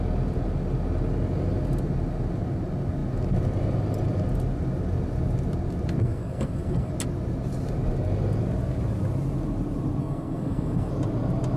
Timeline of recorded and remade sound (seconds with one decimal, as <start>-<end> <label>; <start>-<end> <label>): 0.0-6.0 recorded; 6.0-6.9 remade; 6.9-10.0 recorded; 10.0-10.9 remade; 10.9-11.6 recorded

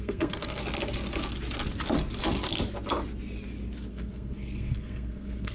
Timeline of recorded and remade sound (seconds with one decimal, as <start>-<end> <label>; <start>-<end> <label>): 0.0-0.6 remade; 0.6-3.9 recorded; 3.9-5.5 remade

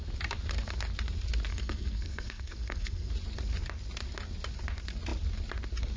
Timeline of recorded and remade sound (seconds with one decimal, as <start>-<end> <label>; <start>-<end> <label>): 0.0-1.5 recorded; 1.5-3.1 remade; 3.1-6.0 recorded